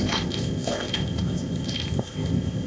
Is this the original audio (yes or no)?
no